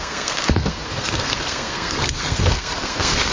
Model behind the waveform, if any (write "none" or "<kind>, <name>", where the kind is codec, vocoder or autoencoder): codec, SNAC